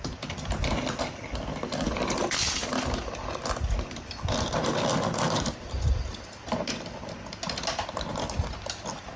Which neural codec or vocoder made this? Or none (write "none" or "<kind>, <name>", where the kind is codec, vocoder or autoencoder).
none